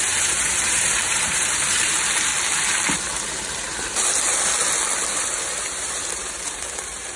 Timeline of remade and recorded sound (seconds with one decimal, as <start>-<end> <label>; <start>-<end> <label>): 0.0-2.3 remade; 2.3-5.1 recorded; 5.1-7.2 remade